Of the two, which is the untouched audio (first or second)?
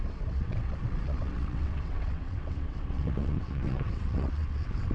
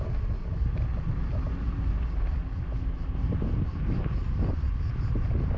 second